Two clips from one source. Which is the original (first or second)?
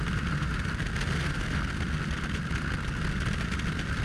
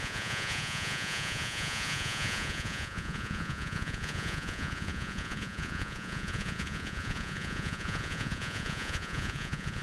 first